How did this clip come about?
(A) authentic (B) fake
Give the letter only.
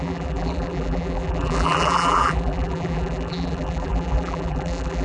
B